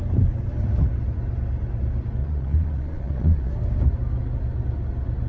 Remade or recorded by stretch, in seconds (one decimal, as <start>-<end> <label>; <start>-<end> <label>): 0.0-2.2 recorded; 2.2-3.5 remade; 3.5-5.3 recorded